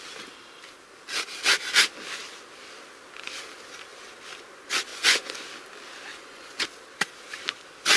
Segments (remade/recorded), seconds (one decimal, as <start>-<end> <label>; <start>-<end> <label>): 0.0-4.9 recorded; 4.9-5.4 remade; 5.4-6.1 recorded; 6.1-6.7 remade; 6.7-8.0 recorded